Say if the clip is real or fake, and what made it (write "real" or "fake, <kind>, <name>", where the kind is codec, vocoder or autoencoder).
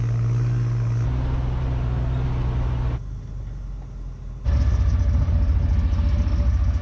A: real